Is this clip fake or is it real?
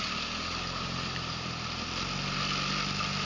real